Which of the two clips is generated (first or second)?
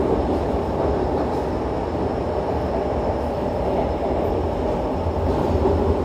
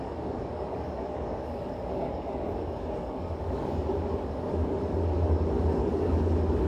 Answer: second